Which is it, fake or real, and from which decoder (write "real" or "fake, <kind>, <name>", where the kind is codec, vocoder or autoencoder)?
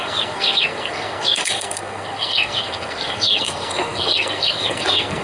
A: fake, codec, SNAC